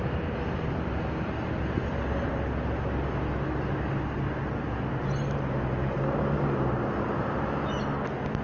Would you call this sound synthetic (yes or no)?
no